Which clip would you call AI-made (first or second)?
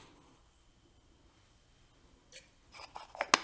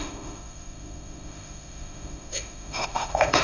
second